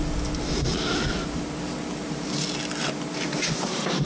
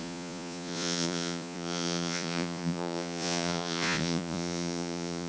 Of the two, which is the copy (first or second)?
second